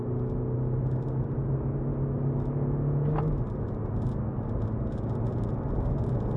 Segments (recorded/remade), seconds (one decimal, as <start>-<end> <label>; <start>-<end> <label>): 0.0-6.4 recorded